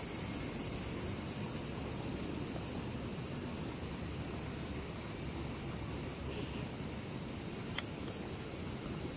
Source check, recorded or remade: recorded